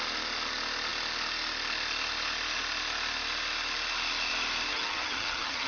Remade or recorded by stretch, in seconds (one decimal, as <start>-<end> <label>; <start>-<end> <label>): 0.0-4.7 recorded; 4.7-5.7 remade